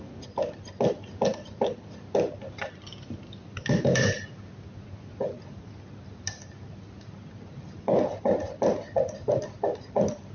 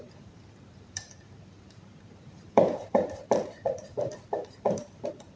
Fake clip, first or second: second